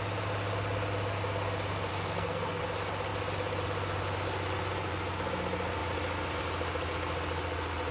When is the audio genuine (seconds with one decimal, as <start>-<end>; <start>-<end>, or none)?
0.0-1.9; 2.6-7.9